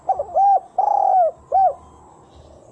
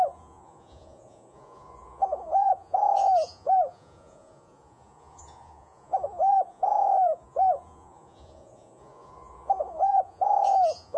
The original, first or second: first